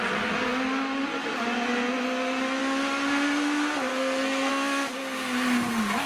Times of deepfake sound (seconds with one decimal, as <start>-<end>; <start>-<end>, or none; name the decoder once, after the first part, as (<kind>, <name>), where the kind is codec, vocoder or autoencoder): 3.9-4.5 (codec, SNAC)